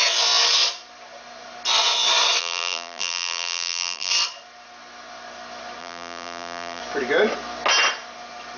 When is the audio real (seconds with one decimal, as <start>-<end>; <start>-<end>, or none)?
0.0-2.4; 4.1-5.8; 6.8-8.6